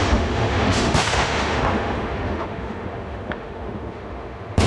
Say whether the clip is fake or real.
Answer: fake